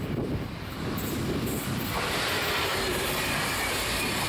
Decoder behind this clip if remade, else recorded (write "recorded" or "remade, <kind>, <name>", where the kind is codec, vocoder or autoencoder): recorded